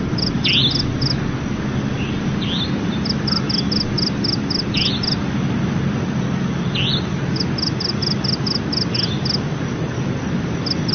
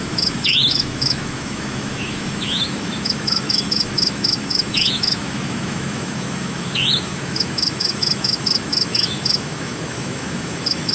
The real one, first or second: first